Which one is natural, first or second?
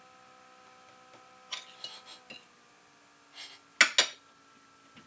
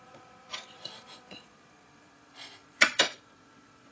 first